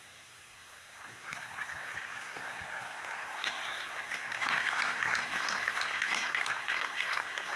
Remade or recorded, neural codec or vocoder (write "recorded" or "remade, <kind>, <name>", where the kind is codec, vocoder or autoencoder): remade, codec, SNAC